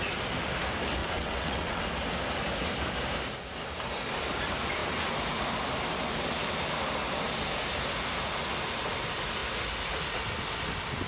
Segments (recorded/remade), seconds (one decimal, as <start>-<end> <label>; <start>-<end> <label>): 0.0-1.0 recorded; 1.0-1.8 remade; 1.8-11.1 recorded